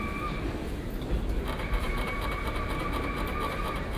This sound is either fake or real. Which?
fake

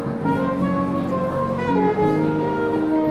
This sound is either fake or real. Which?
real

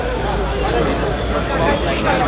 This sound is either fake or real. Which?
real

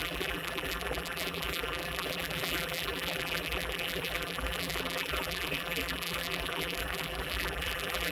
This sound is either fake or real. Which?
fake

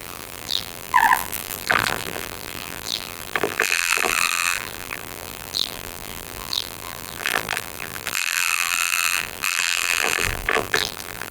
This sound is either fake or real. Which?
fake